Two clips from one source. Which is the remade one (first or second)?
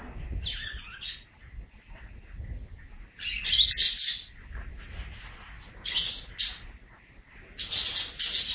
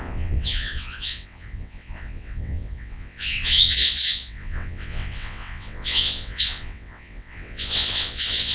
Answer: second